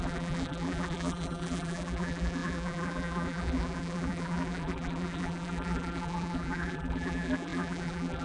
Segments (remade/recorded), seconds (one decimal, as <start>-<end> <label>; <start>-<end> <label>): 0.0-8.2 remade